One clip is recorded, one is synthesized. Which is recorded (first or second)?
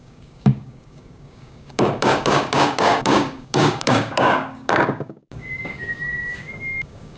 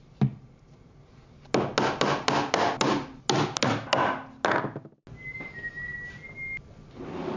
second